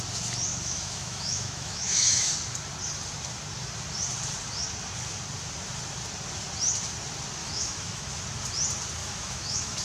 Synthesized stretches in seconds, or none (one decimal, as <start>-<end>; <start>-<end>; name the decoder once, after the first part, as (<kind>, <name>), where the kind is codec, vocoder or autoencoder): 0.5-2.3 (autoencoder, DAC-VAE); 7.4-8.2; 9.0-9.8